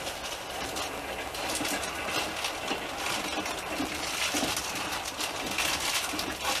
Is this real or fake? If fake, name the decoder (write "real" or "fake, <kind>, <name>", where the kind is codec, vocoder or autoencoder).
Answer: real